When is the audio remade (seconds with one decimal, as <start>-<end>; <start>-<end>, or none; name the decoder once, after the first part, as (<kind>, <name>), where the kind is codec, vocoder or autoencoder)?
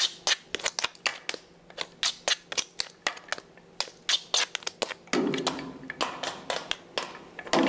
none